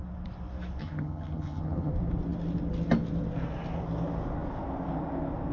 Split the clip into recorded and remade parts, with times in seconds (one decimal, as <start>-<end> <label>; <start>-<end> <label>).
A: 0.0-0.8 recorded; 0.8-1.9 remade; 1.9-5.5 recorded